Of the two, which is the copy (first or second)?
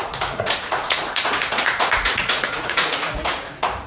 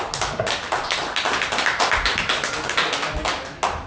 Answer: first